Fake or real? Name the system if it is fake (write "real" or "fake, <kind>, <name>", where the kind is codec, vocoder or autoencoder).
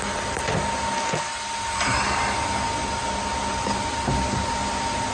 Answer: real